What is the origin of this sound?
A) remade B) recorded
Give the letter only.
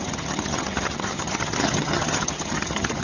A